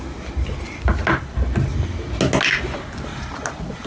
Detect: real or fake real